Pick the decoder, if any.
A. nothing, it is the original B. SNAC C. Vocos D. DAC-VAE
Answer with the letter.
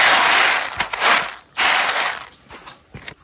A